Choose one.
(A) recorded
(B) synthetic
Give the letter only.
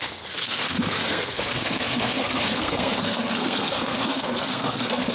B